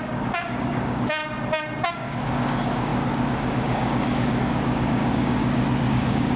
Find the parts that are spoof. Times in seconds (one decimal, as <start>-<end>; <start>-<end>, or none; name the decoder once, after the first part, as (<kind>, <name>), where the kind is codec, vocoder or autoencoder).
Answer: 0.0-1.2 (codec, DAC); 1.9-5.4; 5.9-6.4

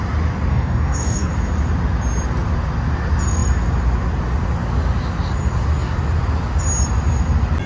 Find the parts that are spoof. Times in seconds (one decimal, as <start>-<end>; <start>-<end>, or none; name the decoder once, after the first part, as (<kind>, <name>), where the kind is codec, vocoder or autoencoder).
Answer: 0.5-1.3 (codec, DAC)

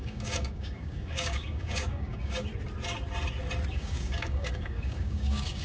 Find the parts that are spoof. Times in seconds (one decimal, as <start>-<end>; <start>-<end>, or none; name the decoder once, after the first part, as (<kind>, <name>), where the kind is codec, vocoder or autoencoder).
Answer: 0.0-2.5 (codec, DAC); 3.7-5.6

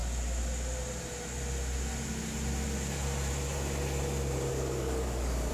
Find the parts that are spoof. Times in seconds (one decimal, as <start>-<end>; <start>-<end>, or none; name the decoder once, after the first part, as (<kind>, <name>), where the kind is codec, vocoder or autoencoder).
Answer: 4.5-5.5 (codec, DAC)

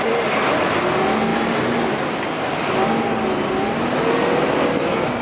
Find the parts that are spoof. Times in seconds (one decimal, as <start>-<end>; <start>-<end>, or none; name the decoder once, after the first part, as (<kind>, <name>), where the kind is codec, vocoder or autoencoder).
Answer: none